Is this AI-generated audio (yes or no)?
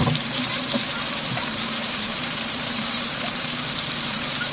yes